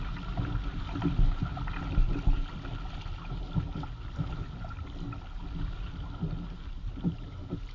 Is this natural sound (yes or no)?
yes